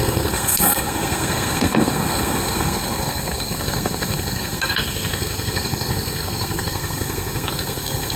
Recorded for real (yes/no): no